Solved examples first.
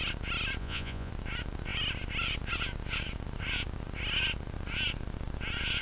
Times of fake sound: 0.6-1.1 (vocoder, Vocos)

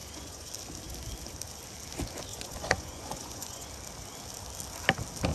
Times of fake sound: 0.0-0.5 (vocoder, Vocos); 2.3-3.7

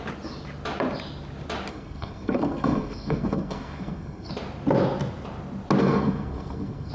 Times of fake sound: 1.7-4.3 (codec, SNAC); 5.8-6.9

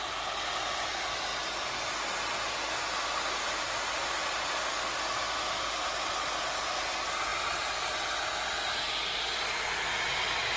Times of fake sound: none

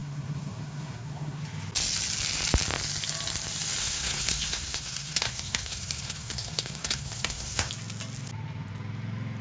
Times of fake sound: 0.0-1.4 (codec, SNAC); 3.8-7.7

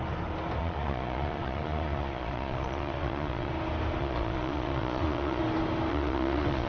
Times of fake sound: 0.6-3.5 (vocoder, Vocos); 4.0-5.4; 5.9-6.7